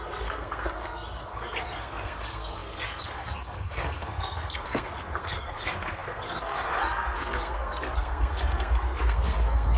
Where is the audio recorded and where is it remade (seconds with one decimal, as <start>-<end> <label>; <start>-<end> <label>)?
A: 0.0-9.8 remade